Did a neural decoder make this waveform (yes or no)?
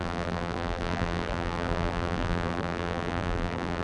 yes